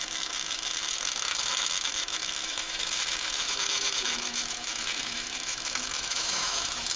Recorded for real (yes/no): no